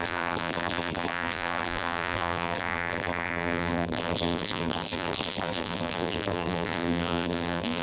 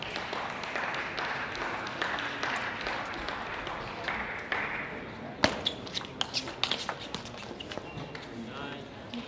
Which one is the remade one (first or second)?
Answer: first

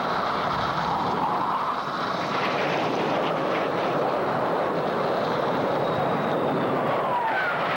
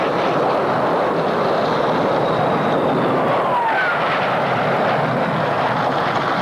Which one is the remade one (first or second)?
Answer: first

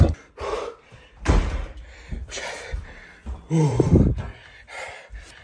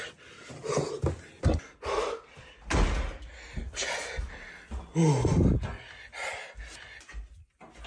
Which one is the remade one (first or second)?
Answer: first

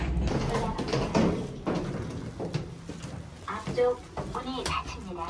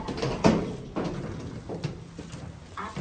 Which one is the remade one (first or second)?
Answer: second